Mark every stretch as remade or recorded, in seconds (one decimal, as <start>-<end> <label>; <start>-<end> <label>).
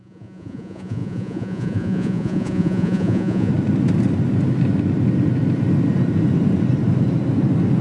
0.0-3.5 remade; 3.5-7.8 recorded